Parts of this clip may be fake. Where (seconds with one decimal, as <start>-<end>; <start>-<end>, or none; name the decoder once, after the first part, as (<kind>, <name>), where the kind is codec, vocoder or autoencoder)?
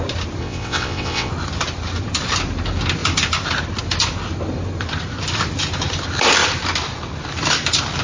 0.4-1.3 (vocoder, WaveNeXt)